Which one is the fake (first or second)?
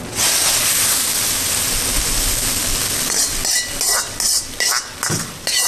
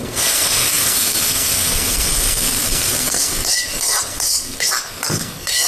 second